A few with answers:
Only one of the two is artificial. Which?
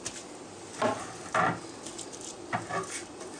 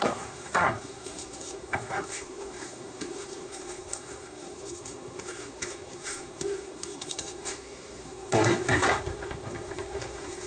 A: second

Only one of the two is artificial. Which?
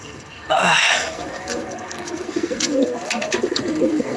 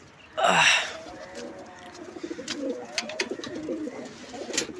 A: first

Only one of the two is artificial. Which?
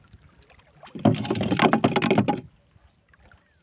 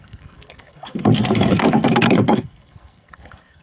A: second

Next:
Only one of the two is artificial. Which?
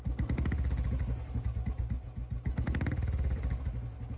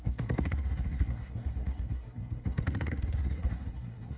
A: second